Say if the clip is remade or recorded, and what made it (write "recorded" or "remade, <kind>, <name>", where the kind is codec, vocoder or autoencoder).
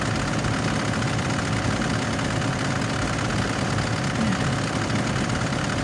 recorded